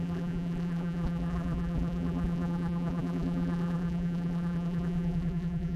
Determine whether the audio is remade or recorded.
remade